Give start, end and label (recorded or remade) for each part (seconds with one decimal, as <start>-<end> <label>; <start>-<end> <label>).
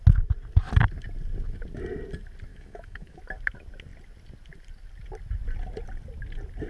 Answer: 0.0-2.5 recorded; 2.5-3.2 remade; 3.2-6.7 recorded